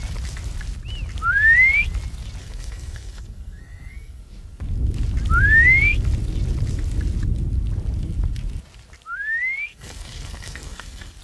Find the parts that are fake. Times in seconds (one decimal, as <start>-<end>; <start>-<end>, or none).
2.4-4.2; 9.7-11.2